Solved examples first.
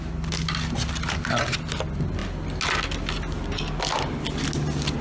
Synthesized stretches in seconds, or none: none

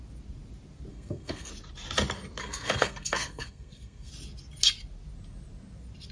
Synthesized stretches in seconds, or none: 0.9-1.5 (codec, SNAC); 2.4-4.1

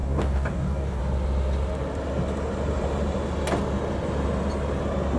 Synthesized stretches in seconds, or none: 0.0-1.0 (codec, DAC)